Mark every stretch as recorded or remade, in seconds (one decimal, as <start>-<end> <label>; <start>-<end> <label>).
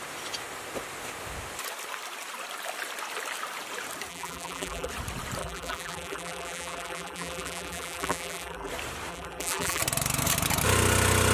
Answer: 0.0-4.1 recorded; 4.1-4.9 remade; 4.9-5.4 recorded; 5.4-8.7 remade; 8.7-9.1 recorded; 9.1-9.8 remade; 9.8-11.3 recorded